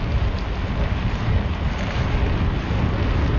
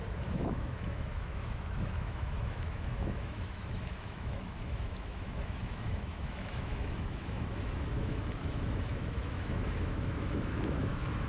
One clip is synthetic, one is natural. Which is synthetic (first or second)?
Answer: second